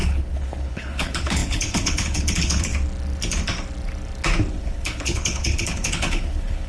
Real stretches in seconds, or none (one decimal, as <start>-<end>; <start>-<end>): 2.7-4.5